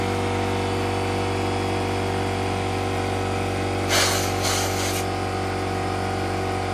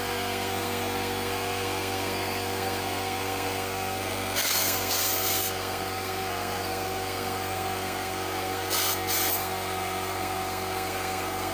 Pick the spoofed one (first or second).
second